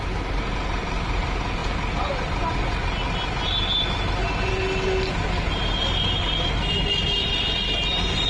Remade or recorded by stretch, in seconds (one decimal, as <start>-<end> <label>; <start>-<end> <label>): 0.0-8.3 recorded